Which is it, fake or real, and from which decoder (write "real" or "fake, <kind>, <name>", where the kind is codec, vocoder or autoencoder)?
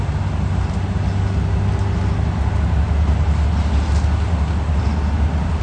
real